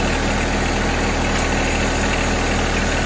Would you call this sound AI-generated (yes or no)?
no